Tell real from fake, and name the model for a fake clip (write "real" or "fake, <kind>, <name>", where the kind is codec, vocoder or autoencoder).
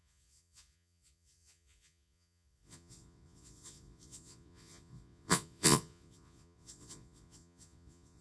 fake, vocoder, Vocos